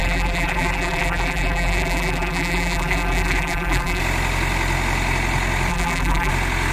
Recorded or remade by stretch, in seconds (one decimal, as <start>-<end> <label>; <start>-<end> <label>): 0.0-4.0 remade; 4.0-5.7 recorded; 5.7-6.3 remade; 6.3-6.7 recorded